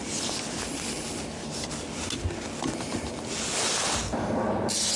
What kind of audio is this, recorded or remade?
recorded